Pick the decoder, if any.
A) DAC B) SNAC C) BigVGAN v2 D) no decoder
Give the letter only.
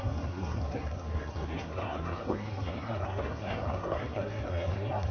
B